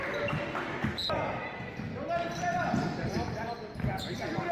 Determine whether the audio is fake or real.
real